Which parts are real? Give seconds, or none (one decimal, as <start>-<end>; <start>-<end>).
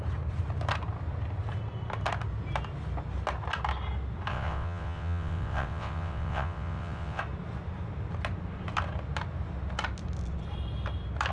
0.0-4.3; 7.2-11.3